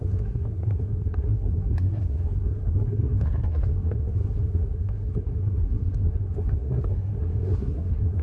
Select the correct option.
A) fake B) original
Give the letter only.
A